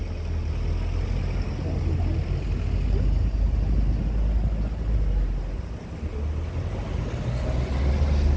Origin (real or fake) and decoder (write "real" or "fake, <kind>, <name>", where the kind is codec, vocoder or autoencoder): real